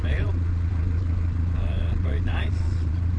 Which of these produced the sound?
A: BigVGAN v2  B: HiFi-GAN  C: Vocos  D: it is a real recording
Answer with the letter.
C